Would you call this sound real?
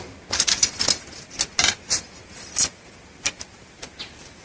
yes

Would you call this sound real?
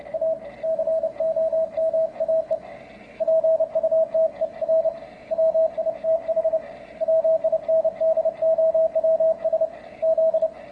yes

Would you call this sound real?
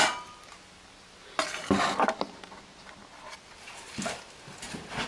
yes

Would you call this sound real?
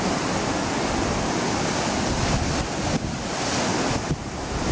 yes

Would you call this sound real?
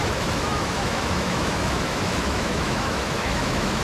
no